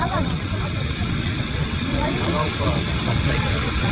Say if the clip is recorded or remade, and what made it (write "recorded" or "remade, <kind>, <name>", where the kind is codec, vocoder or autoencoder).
remade, vocoder, WaveNeXt